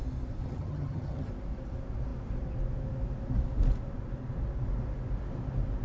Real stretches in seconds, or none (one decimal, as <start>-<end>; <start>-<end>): 0.0-0.4; 1.3-5.8